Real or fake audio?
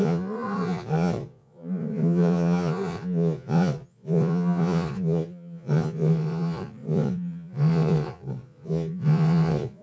fake